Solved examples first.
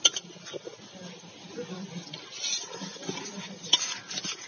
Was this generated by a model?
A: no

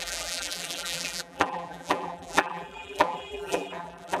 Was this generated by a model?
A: yes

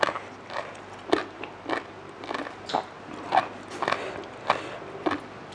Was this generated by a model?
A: no